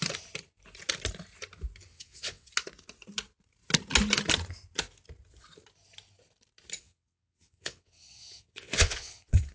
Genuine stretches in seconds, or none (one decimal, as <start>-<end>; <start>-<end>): 0.0-1.9; 2.5-6.8

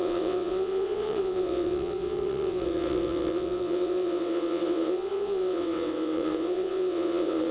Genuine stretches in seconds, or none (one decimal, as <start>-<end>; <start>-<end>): none

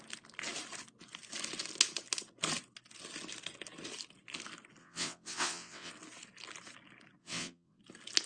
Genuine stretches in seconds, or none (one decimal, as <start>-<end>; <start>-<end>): 0.0-4.8; 5.9-7.2; 7.8-8.3